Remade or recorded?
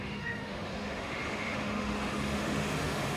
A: remade